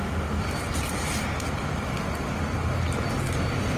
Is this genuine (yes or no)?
yes